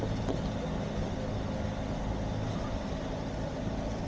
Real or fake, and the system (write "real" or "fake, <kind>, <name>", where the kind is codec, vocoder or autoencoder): real